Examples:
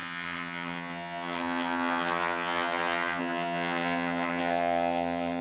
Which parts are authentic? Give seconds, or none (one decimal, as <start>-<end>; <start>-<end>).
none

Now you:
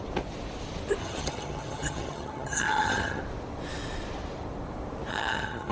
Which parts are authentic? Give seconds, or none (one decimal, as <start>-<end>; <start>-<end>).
0.0-1.0; 3.2-5.1

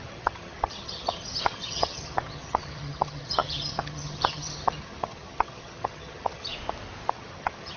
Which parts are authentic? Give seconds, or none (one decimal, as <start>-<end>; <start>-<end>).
6.5-7.1

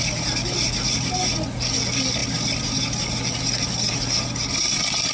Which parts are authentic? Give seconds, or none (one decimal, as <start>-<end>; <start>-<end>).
0.0-5.1

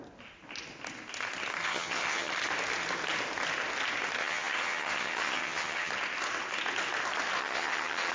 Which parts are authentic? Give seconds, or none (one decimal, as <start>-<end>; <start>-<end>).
0.0-1.6; 2.3-4.2; 5.9-7.4

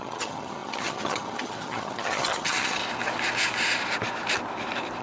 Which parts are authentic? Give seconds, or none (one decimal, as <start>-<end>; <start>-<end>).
2.8-5.0

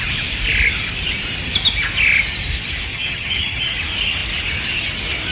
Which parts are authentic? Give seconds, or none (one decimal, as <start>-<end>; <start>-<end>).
0.0-2.9; 3.7-5.3